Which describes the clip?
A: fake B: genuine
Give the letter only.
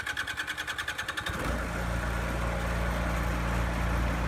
B